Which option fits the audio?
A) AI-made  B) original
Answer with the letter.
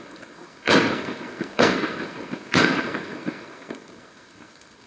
A